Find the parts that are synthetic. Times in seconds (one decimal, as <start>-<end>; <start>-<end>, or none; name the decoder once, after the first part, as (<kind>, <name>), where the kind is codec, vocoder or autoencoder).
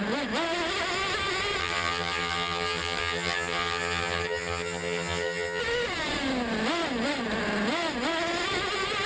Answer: 1.6-5.6 (vocoder, HiFi-GAN)